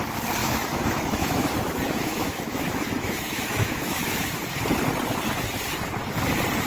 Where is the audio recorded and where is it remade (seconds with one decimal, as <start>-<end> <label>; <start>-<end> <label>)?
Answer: 0.0-0.4 recorded; 0.4-4.4 remade; 4.4-6.7 recorded